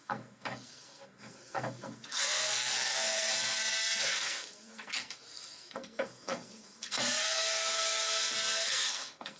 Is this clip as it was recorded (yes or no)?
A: no